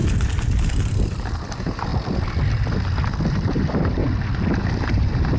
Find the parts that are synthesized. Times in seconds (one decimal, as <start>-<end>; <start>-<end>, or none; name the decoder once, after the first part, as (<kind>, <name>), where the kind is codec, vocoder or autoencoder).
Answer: 1.5-1.9 (vocoder, BigVGAN v2); 3.3-4.0; 4.7-5.4